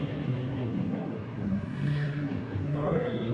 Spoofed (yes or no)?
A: yes